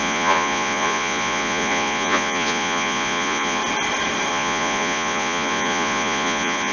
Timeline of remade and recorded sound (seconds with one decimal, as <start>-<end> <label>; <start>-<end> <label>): 0.0-3.6 remade; 3.6-4.3 recorded; 4.3-6.7 remade